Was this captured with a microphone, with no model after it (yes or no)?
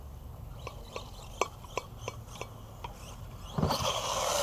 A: yes